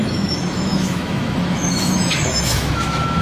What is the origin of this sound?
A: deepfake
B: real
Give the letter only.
A